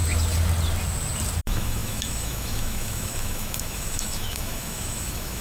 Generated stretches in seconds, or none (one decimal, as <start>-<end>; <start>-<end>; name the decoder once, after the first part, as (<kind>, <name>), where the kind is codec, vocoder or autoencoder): 1.4-5.4 (autoencoder, DAC-VAE)